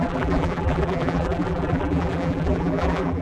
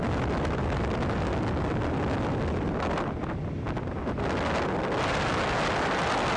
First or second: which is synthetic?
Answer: first